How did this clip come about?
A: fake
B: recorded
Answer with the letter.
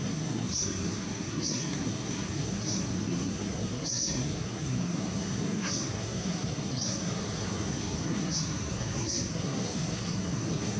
A